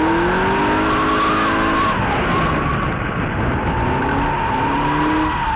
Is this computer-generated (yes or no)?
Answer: no